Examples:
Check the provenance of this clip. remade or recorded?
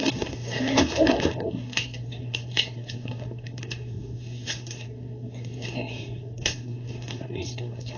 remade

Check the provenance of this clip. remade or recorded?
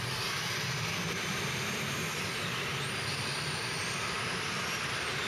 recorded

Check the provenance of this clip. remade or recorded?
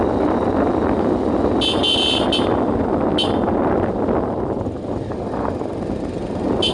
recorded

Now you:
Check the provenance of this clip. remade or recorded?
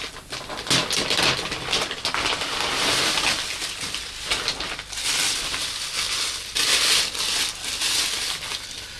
recorded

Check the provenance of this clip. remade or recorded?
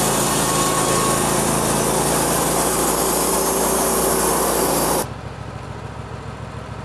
recorded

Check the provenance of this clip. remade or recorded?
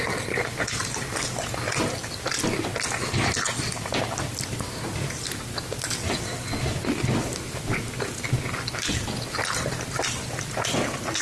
recorded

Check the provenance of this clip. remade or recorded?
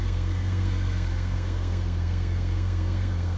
remade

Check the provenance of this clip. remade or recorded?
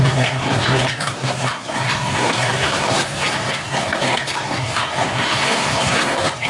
remade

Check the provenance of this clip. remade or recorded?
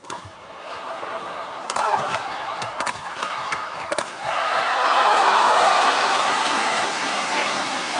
remade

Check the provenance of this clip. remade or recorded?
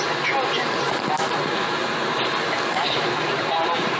recorded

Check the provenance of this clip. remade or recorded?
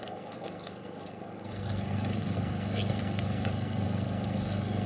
remade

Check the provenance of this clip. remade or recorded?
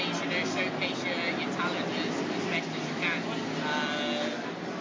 recorded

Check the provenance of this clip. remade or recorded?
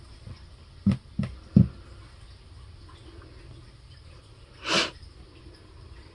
recorded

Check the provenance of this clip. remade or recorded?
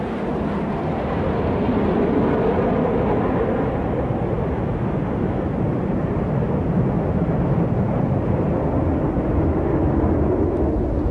recorded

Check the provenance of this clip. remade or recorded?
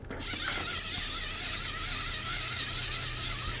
recorded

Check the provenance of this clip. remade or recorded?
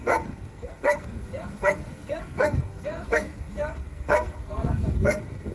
remade